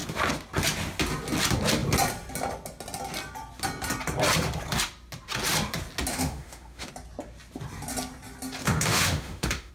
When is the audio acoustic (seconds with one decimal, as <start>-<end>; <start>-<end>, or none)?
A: 0.0-6.1; 6.9-8.6